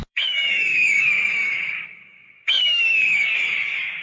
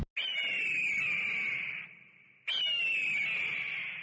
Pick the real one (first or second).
second